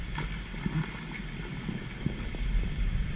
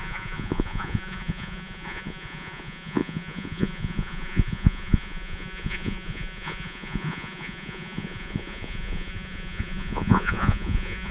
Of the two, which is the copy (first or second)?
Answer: second